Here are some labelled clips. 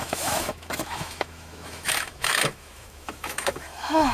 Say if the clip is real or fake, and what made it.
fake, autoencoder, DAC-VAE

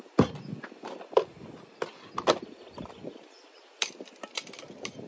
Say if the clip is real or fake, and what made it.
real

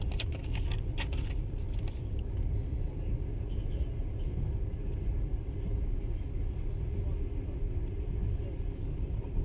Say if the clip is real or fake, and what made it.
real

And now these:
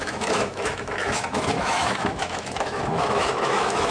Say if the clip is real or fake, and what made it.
fake, autoencoder, DAC-VAE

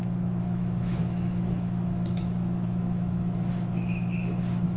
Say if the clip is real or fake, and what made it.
fake, autoencoder, DAC-VAE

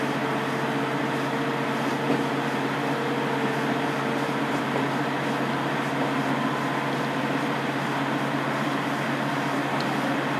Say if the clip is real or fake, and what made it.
real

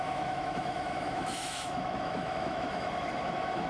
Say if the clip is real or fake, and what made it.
fake, autoencoder, DAC-VAE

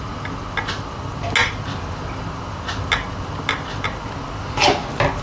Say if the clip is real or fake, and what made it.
real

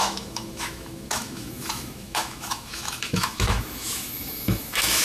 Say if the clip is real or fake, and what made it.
fake, autoencoder, DAC-VAE